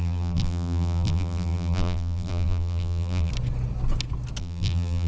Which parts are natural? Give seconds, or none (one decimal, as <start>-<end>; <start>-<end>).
3.3-4.4